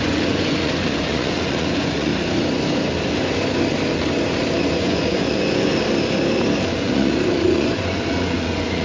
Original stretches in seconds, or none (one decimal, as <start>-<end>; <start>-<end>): 2.1-4.8; 5.7-6.8